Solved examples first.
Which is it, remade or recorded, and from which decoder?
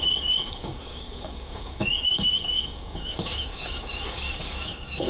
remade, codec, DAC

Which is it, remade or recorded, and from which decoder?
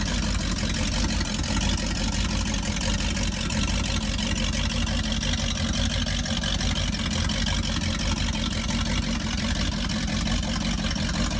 recorded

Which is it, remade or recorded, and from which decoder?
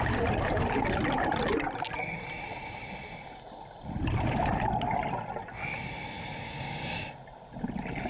recorded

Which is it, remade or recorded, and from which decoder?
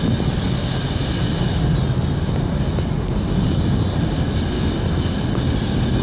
recorded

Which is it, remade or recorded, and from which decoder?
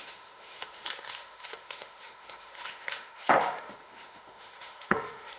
remade, autoencoder, DAC-VAE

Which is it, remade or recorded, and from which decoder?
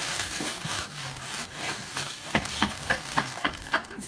remade, codec, DAC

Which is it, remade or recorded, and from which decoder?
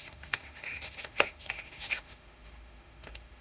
remade, autoencoder, DAC-VAE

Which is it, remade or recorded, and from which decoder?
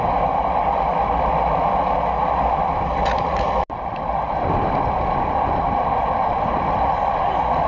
recorded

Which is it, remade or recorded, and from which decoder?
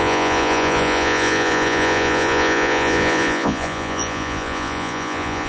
remade, vocoder, Vocos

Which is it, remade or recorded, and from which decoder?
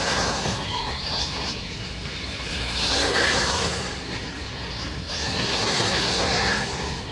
remade, codec, SNAC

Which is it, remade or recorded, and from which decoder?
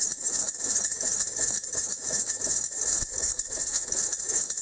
remade, autoencoder, DAC-VAE